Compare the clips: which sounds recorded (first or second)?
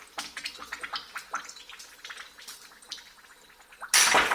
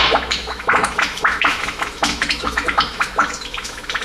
first